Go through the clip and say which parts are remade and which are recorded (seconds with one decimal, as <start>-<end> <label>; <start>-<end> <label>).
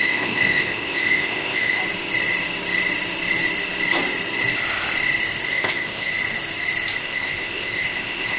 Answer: 0.0-1.8 remade; 1.8-5.5 recorded; 5.5-6.1 remade; 6.1-7.0 recorded; 7.0-8.4 remade